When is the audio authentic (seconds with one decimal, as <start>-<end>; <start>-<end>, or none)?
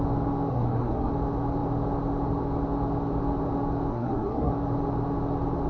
0.0-0.5; 1.1-3.9; 4.5-5.7